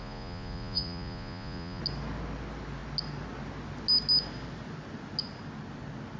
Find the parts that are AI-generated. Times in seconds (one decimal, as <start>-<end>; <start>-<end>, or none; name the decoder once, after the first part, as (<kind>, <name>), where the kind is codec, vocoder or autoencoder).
0.0-1.8 (vocoder, Vocos)